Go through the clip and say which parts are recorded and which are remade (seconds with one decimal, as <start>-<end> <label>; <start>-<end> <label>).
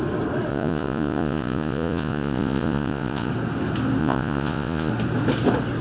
0.0-0.5 recorded; 0.5-3.3 remade; 3.3-4.0 recorded; 4.0-4.9 remade; 4.9-5.8 recorded